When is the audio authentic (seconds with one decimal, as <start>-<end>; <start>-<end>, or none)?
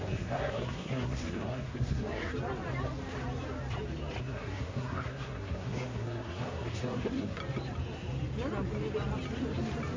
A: 2.3-4.2; 7.4-10.0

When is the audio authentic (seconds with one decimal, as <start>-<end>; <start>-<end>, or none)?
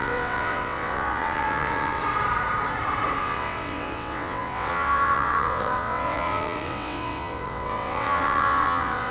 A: 2.0-3.2